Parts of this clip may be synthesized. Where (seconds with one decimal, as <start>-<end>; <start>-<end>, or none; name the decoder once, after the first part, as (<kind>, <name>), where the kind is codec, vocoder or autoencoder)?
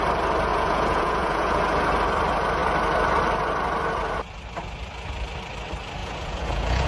0.5-1.6 (vocoder, Vocos); 6.0-6.9